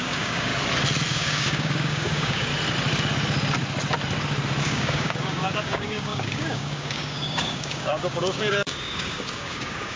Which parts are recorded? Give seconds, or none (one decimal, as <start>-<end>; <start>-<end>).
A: 0.5-1.1; 2.5-4.6